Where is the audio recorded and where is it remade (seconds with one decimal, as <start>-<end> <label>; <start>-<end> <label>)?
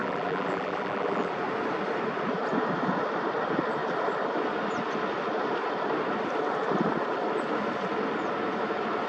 0.0-1.3 remade; 1.3-9.1 recorded